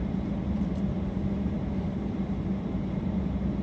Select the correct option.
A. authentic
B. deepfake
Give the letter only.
B